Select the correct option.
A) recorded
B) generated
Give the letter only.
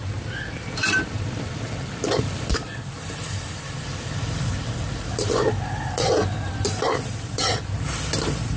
B